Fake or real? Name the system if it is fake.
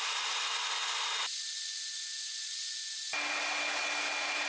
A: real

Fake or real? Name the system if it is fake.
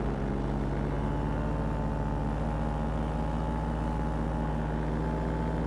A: real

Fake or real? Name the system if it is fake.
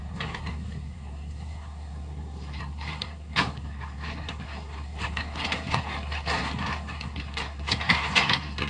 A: fake, codec, SNAC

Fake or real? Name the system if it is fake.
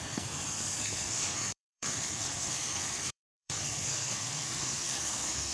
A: fake, codec, SNAC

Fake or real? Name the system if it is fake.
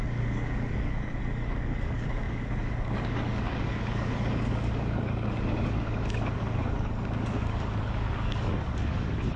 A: fake, codec, DAC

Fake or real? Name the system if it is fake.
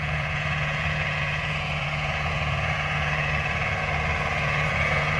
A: fake, vocoder, Vocos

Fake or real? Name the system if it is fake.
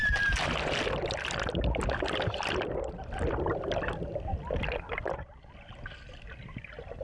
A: real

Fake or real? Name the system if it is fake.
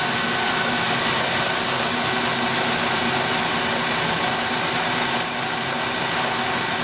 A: real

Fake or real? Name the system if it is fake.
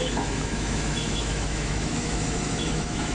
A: fake, autoencoder, DAC-VAE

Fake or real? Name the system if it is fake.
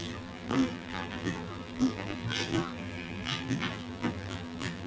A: fake, vocoder, BigVGAN v2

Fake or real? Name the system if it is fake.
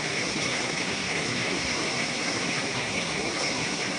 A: fake, codec, SNAC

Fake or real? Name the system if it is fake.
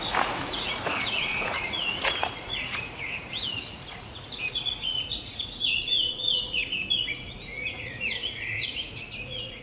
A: fake, vocoder, Vocos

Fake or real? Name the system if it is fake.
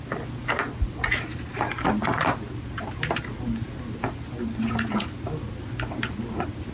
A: real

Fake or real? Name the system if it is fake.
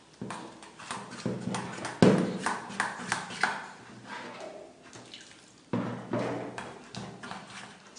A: real